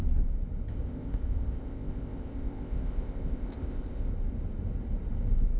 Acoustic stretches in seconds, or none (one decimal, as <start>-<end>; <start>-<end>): 0.0-0.7; 4.1-5.6